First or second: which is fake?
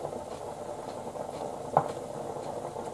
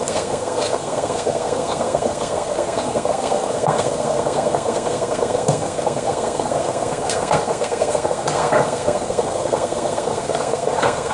second